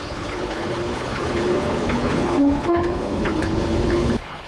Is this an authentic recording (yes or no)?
no